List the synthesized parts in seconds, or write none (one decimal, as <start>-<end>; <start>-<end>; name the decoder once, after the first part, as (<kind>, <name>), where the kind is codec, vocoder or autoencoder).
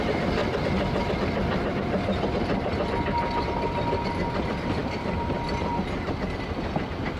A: 4.8-6.1 (vocoder, BigVGAN v2)